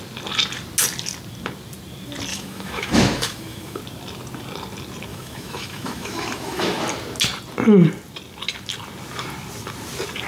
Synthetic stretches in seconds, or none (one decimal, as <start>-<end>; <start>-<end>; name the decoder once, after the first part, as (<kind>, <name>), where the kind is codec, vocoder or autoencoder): 2.3-3.8 (autoencoder, DAC-VAE); 5.1-6.8